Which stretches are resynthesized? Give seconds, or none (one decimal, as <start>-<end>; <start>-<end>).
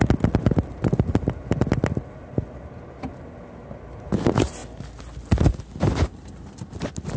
none